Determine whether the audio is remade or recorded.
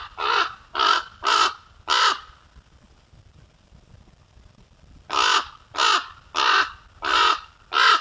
recorded